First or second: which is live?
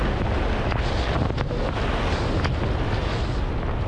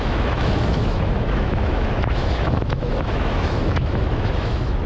first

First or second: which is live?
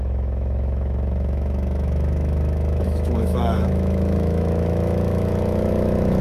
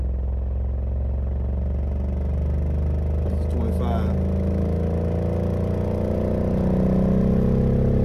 second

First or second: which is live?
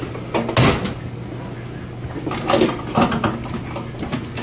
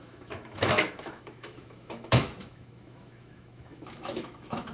first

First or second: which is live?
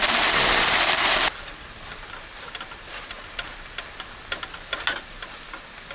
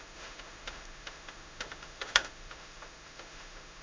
first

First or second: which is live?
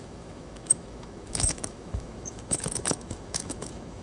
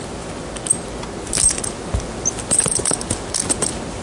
second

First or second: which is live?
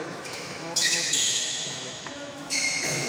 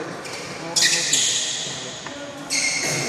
second